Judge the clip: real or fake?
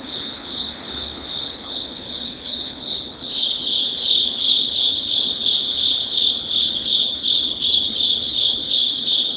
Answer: fake